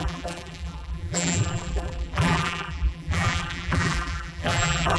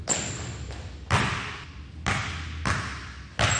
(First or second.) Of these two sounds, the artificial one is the first